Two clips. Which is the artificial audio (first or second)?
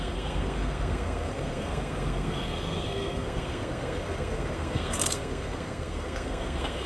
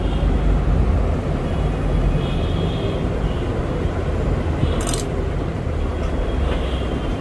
first